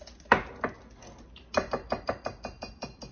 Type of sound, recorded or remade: recorded